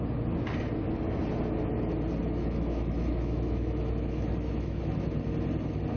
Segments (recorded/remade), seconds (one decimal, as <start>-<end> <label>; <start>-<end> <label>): 0.0-2.2 recorded; 2.2-4.8 remade; 4.8-6.0 recorded